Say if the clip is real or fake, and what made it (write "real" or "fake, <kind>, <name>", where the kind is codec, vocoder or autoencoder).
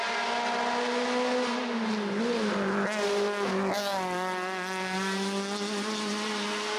real